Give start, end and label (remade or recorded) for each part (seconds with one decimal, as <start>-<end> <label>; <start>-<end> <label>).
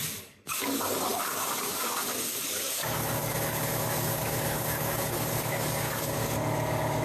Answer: 0.0-7.0 remade